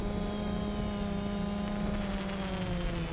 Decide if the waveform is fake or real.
real